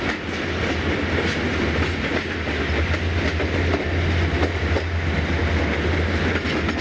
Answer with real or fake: real